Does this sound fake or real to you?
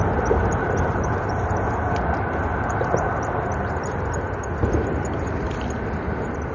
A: real